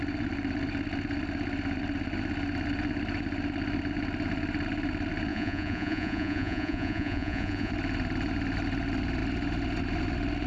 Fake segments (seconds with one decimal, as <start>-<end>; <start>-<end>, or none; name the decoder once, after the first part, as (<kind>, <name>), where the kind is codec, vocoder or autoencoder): 5.3-7.7 (vocoder, Vocos)